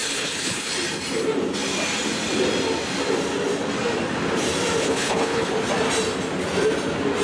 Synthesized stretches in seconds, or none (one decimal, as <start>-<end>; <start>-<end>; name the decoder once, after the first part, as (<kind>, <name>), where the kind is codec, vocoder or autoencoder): 0.0-0.7 (codec, HILCodec); 4.8-5.5